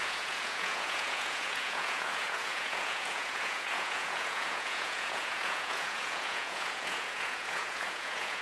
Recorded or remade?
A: remade